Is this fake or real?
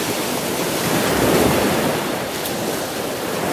fake